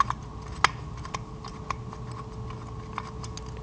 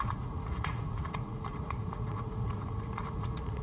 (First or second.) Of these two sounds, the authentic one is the first